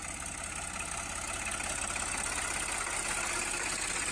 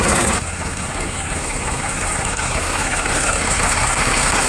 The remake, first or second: second